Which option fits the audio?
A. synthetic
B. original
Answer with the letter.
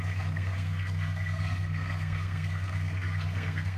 A